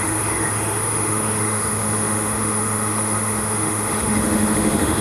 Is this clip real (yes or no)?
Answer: no